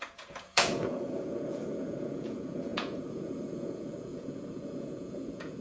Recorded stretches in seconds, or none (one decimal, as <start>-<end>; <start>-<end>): none